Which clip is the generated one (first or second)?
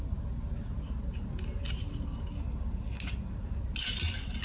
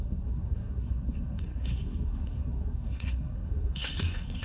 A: second